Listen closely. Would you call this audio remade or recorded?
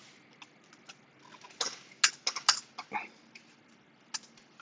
recorded